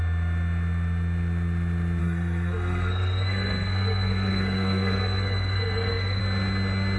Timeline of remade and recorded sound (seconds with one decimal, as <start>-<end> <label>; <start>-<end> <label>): 0.0-2.0 recorded; 2.0-6.2 remade; 6.2-7.0 recorded